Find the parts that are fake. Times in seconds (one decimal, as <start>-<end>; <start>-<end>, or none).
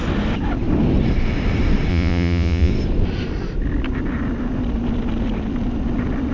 1.9-2.7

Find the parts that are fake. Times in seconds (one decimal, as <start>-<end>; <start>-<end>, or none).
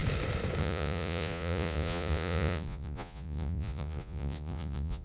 0.6-5.0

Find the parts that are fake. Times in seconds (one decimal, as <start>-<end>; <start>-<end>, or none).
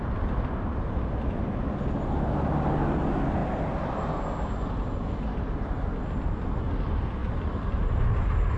none